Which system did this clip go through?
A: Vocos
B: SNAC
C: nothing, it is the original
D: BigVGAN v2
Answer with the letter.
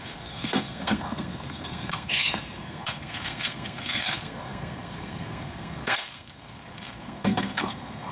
B